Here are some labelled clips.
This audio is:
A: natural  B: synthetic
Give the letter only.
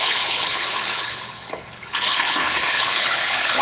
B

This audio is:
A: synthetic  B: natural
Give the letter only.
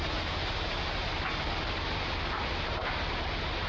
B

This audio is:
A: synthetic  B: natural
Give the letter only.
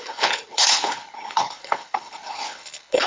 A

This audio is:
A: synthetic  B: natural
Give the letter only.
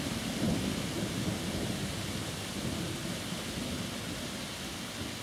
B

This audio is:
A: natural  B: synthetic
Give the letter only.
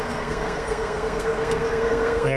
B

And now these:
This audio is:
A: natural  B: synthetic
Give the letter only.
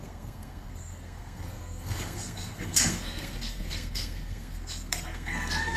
B